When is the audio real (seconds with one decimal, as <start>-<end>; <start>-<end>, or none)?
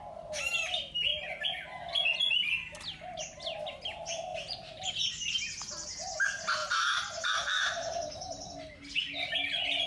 0.0-4.3; 4.9-6.6; 8.5-9.9